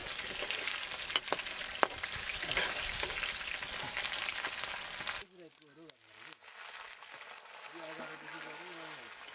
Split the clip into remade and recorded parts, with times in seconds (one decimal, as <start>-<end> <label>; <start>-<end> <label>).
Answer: 0.0-9.3 recorded